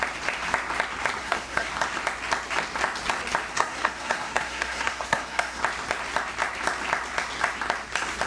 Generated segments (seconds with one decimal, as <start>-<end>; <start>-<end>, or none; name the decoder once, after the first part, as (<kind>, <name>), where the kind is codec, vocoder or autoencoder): 1.2-1.7 (codec, SNAC); 3.5-5.6